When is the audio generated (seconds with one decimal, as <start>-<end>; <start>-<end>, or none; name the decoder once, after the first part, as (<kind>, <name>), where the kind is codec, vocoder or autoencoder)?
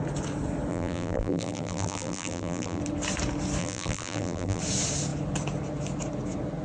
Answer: 0.7-2.8 (vocoder, BigVGAN v2); 3.6-4.6